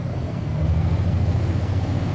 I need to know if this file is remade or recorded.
remade